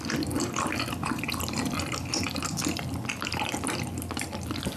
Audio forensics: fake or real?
real